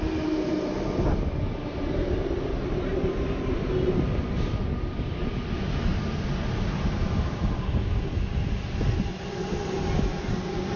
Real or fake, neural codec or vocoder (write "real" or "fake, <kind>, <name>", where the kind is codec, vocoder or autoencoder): real